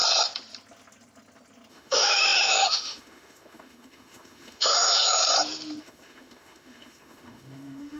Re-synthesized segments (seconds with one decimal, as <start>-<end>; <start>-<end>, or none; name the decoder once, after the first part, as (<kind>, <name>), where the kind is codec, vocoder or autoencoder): 1.7-5.2 (autoencoder, DAC-VAE); 5.8-8.0